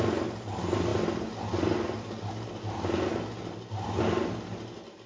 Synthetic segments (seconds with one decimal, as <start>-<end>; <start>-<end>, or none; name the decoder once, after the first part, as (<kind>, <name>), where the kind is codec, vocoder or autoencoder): none